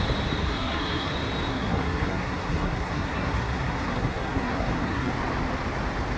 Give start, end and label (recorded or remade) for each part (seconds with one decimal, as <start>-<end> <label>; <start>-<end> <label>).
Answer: 0.0-0.4 recorded; 0.4-1.1 remade; 1.1-1.5 recorded; 1.5-5.1 remade; 5.1-6.2 recorded